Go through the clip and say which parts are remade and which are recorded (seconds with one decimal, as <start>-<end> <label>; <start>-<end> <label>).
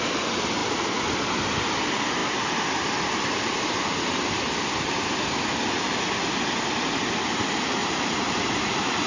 0.0-7.8 recorded; 7.8-9.1 remade